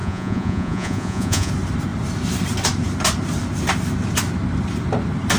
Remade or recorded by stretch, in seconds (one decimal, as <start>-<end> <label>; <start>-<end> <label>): 0.0-1.5 remade; 1.5-5.4 recorded